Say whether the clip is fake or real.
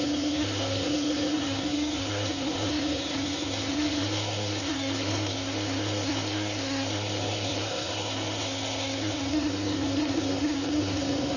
fake